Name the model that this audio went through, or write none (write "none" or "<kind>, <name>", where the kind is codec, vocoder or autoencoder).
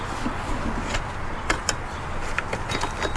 none